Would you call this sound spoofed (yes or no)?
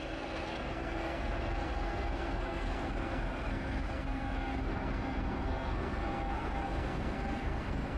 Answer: yes